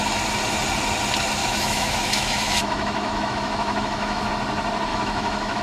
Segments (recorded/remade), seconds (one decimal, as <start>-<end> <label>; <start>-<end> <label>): 0.0-1.4 recorded; 1.4-4.3 remade; 4.3-4.9 recorded; 4.9-5.6 remade